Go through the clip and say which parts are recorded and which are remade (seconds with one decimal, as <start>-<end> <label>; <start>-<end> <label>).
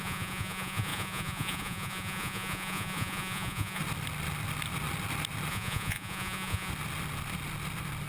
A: 0.0-3.8 remade; 3.8-5.5 recorded; 5.5-6.7 remade; 6.7-8.1 recorded